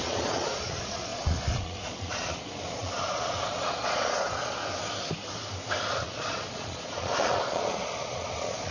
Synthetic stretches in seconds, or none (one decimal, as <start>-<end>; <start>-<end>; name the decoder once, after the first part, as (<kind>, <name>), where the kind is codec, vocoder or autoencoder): 0.0-4.6 (vocoder, Vocos); 5.9-8.7